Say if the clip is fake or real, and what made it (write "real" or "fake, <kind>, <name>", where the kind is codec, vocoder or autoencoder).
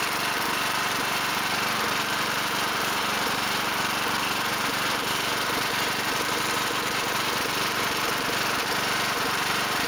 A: fake, vocoder, BigVGAN v2